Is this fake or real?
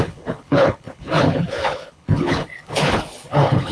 fake